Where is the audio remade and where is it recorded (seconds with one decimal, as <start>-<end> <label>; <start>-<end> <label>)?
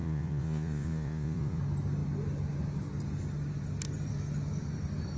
0.0-1.6 remade; 1.6-5.2 recorded